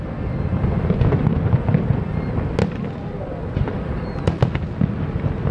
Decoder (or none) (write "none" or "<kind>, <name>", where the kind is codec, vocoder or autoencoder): none